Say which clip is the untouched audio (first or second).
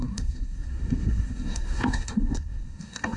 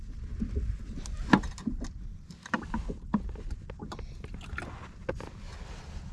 second